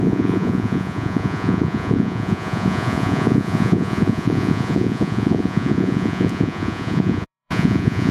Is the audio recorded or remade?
remade